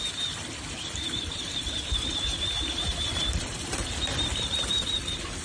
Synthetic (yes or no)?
yes